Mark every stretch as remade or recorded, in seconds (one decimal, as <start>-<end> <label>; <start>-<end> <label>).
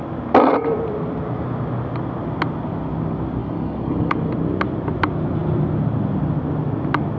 0.0-3.4 recorded; 3.4-4.2 remade; 4.2-7.2 recorded